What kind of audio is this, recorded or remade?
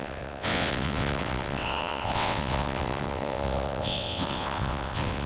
remade